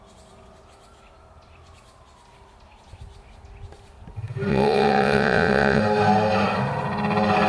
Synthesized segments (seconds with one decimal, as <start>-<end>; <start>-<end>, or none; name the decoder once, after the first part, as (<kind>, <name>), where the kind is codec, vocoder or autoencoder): 4.5-5.8 (vocoder, WaveNeXt)